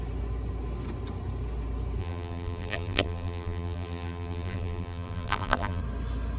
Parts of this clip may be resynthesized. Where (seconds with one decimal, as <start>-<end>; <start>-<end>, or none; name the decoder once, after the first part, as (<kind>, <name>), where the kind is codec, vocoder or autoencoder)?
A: 2.0-5.8 (vocoder, BigVGAN v2)

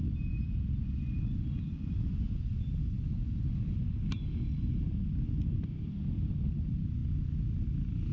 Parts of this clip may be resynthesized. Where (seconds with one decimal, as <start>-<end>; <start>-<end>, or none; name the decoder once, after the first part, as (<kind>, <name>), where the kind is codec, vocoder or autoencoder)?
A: none

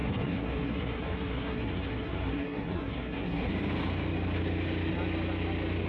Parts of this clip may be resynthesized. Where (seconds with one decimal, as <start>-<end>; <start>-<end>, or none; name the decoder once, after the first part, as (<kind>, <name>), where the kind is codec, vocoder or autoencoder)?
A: 0.0-3.5 (codec, SNAC)

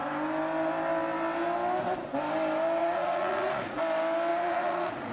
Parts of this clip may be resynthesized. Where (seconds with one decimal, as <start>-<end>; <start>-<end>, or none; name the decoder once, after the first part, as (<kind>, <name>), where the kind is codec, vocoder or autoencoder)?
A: 2.8-3.8 (vocoder, Vocos); 4.3-5.1